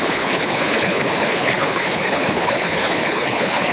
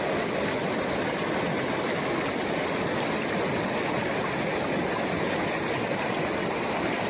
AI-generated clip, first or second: first